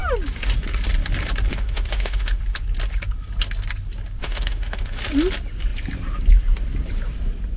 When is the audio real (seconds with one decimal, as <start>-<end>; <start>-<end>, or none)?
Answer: 0.0-1.5; 2.4-4.2; 5.0-7.6